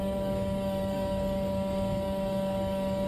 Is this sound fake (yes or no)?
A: yes